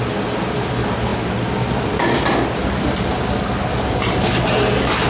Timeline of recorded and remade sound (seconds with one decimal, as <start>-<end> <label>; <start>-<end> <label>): 0.0-5.1 recorded